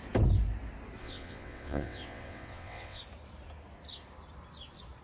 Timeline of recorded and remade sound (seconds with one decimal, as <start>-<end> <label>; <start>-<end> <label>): 0.0-1.0 recorded; 1.0-3.0 remade; 3.0-5.0 recorded